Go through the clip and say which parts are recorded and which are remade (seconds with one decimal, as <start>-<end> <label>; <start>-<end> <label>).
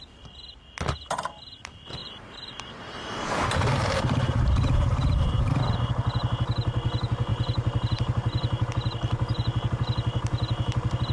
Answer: 0.0-2.0 recorded; 2.0-5.5 remade; 5.5-7.3 recorded; 7.3-8.7 remade; 8.7-11.1 recorded